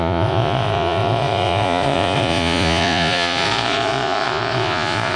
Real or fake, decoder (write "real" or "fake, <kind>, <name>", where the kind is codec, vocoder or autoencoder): fake, vocoder, Vocos